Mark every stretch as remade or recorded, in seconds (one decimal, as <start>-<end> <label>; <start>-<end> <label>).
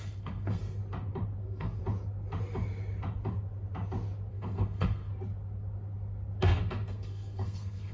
0.0-0.8 remade; 0.8-1.4 recorded; 1.4-1.8 remade; 1.8-4.3 recorded; 4.3-5.1 remade; 5.1-6.4 recorded; 6.4-7.9 remade